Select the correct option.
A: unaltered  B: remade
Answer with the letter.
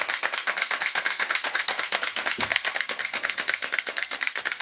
B